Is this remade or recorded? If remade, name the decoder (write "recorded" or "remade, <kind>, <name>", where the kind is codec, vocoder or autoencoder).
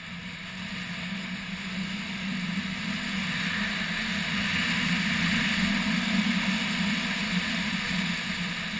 recorded